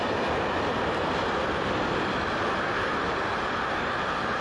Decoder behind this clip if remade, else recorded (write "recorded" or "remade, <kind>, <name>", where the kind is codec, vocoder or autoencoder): recorded